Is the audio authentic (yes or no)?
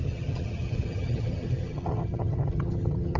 no